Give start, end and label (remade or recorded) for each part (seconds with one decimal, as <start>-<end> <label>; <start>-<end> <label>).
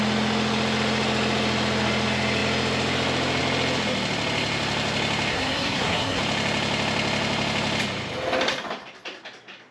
0.0-5.3 recorded; 5.3-6.2 remade; 6.2-9.7 recorded